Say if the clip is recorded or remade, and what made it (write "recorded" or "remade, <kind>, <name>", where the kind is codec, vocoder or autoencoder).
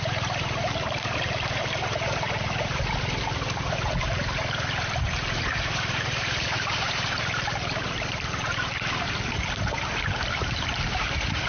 remade, vocoder, BigVGAN v2